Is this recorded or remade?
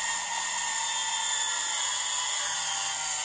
recorded